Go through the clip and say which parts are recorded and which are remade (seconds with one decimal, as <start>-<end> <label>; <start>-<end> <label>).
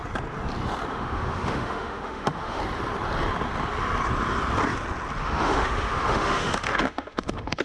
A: 0.0-0.9 recorded; 0.9-2.6 remade; 2.6-5.2 recorded; 5.2-7.6 remade